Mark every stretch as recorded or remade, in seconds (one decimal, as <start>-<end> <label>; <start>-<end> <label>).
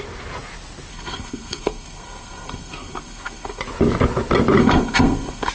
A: 0.0-0.9 recorded; 0.9-3.6 remade; 3.6-4.6 recorded; 4.6-5.5 remade